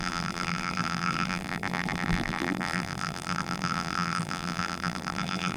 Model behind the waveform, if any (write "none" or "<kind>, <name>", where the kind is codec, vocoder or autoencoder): vocoder, BigVGAN v2